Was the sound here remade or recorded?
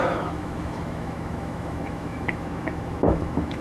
remade